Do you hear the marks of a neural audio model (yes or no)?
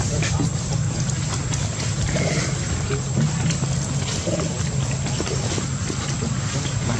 no